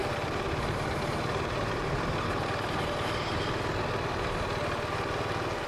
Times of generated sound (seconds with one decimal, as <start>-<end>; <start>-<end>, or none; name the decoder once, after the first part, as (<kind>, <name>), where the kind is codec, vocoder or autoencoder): 0.0-3.4 (vocoder, BigVGAN v2)